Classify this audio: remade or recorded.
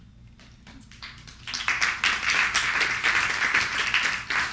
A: recorded